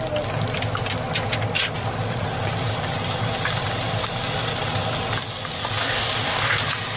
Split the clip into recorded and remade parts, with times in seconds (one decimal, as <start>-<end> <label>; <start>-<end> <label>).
0.0-5.8 recorded; 5.8-6.6 remade; 6.6-7.0 recorded